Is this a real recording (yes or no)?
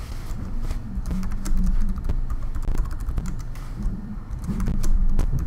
no